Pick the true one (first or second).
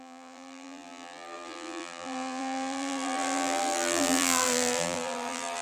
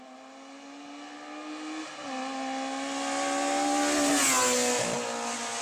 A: second